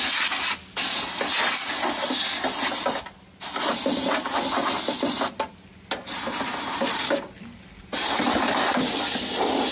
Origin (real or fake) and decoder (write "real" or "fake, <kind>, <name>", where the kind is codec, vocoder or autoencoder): real